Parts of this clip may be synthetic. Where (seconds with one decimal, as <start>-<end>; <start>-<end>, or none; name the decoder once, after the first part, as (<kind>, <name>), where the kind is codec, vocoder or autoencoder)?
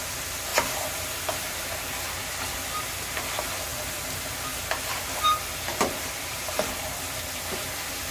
0.0-3.7 (vocoder, BigVGAN v2); 4.7-8.1